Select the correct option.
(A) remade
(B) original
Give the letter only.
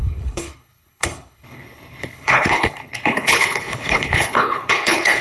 A